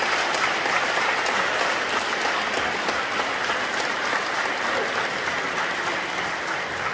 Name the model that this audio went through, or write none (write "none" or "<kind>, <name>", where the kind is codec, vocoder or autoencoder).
none